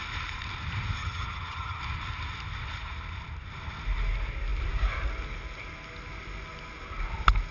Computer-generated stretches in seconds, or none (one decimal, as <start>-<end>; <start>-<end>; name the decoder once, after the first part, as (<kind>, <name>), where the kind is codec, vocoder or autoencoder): 1.0-1.8 (vocoder, HiFi-GAN)